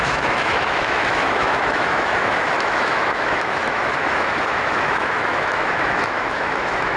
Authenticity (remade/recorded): remade